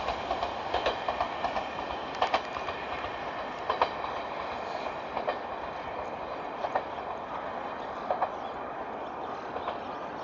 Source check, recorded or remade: recorded